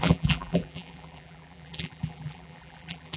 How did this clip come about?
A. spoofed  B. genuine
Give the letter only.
A